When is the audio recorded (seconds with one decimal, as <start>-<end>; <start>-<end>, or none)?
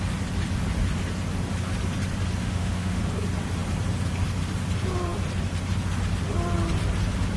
0.0-2.4; 3.0-7.4